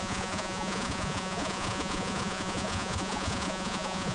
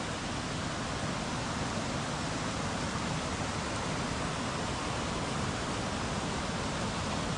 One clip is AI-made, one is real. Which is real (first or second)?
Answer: second